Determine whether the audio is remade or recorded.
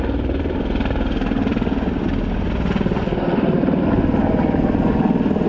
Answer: recorded